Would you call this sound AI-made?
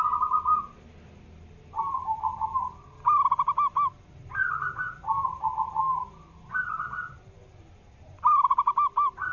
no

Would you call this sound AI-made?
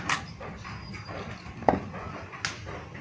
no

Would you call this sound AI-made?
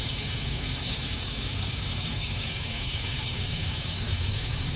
yes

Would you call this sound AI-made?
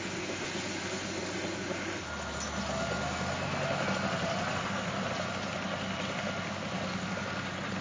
no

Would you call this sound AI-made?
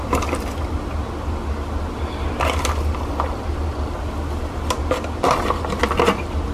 no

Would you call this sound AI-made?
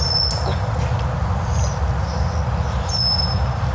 no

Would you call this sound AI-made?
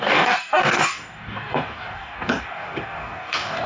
yes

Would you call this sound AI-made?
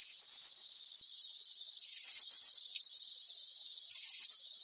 no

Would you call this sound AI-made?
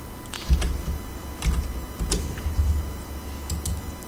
no